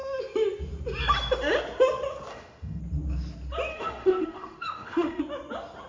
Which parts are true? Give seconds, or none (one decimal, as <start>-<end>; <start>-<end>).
0.0-2.3; 2.8-3.7; 5.2-5.9